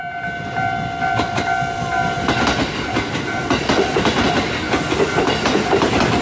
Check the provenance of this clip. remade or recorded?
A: recorded